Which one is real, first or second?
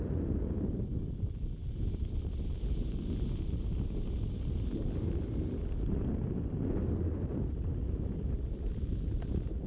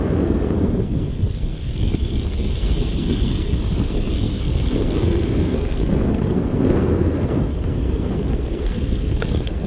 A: first